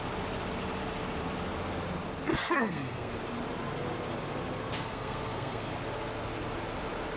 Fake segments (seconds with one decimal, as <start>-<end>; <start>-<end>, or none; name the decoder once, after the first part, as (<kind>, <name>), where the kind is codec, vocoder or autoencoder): 2.3-3.1 (codec, SNAC); 4.8-5.7